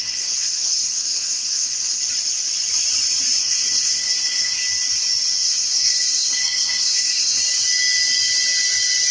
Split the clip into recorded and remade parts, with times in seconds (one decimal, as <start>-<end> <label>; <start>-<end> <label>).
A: 0.0-2.0 remade; 2.0-3.4 recorded; 3.4-4.6 remade; 4.6-5.4 recorded; 5.4-7.4 remade; 7.4-9.1 recorded